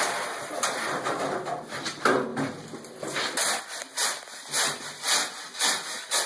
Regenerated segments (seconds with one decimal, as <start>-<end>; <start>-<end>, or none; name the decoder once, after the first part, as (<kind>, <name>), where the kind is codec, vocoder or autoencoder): none